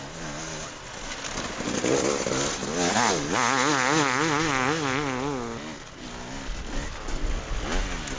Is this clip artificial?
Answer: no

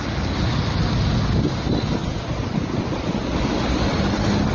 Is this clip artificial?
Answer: no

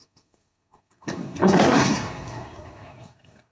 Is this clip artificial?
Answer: yes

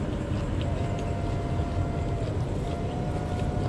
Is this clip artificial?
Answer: no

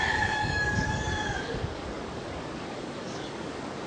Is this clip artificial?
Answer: yes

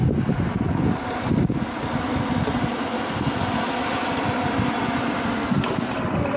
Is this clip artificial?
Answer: no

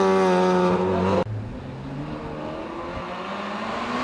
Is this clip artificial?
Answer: no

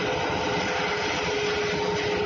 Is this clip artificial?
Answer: no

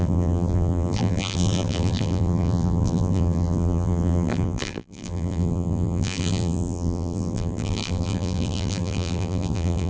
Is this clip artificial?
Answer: yes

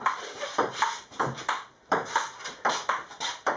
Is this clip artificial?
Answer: no